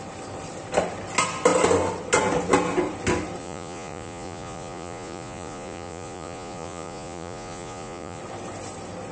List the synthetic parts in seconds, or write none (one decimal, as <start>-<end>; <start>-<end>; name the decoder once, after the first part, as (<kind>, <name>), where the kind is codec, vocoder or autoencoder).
3.4-8.2 (vocoder, Vocos)